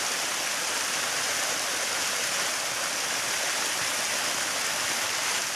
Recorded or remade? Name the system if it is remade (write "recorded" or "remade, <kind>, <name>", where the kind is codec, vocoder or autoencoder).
recorded